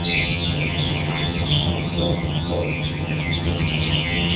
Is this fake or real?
fake